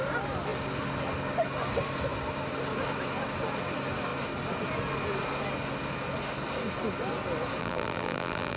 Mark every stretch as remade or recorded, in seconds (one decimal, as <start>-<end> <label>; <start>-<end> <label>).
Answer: 0.0-7.6 recorded; 7.6-8.6 remade